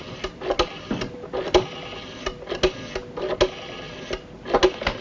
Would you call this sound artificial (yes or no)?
no